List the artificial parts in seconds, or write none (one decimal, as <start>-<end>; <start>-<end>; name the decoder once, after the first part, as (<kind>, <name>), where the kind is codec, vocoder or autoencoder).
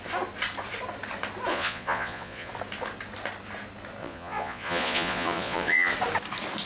1.5-2.5 (vocoder, Vocos); 4.0-5.9